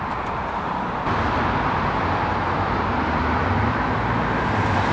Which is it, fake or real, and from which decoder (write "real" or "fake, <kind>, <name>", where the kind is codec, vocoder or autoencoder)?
real